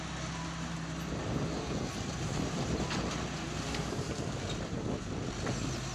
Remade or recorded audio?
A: remade